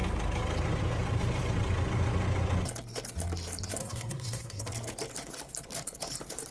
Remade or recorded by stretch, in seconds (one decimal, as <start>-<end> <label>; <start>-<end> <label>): 0.0-3.8 recorded; 3.8-4.7 remade; 4.7-6.5 recorded